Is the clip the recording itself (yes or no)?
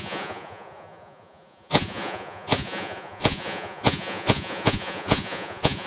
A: no